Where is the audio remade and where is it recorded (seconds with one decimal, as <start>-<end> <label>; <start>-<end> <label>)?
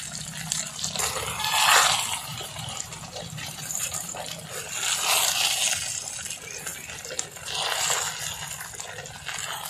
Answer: 0.0-2.3 recorded; 2.3-4.2 remade; 4.2-9.7 recorded